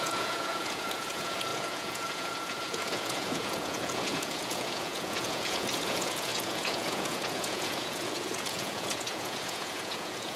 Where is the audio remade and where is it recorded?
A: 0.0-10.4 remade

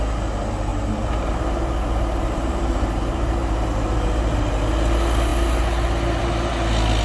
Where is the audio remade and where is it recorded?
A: 0.0-0.7 recorded; 0.7-4.5 remade; 4.5-7.0 recorded

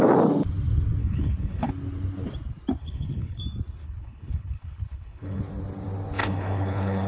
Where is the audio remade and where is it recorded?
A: 0.0-1.0 recorded; 1.0-1.7 remade; 1.7-2.8 recorded; 2.8-3.4 remade; 3.4-3.8 recorded; 3.8-5.4 remade; 5.4-6.2 recorded; 6.2-7.1 remade

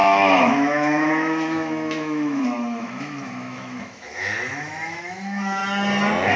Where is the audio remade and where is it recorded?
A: 0.0-5.6 remade; 5.6-6.4 recorded

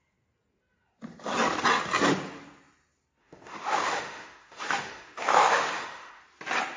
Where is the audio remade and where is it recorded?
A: 0.0-3.2 recorded; 3.2-6.2 remade; 6.2-6.8 recorded

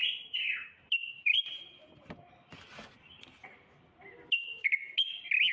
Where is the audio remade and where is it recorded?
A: 0.0-2.6 remade; 2.6-5.5 recorded

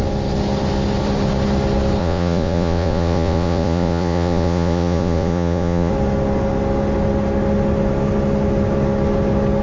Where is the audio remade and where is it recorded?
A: 0.0-2.0 recorded; 2.0-5.9 remade; 5.9-9.6 recorded